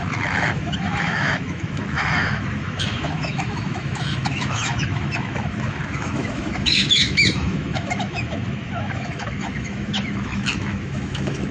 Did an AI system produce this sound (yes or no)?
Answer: yes